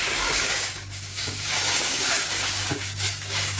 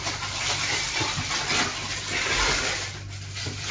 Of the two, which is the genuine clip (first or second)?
second